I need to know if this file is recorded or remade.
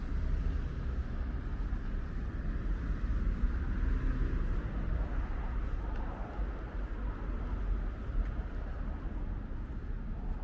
recorded